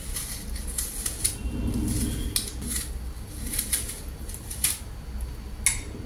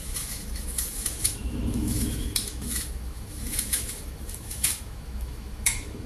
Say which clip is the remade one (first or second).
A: second